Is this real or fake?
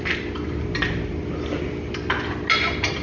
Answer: real